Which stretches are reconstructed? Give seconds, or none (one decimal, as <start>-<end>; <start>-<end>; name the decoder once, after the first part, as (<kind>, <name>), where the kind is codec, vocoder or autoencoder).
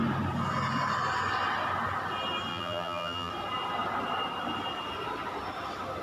2.5-3.3 (vocoder, BigVGAN v2)